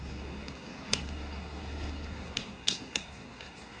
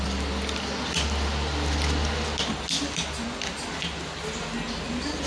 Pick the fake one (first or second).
first